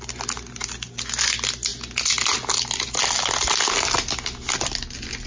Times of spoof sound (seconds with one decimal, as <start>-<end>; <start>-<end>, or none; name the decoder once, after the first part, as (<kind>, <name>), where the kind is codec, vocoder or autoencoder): none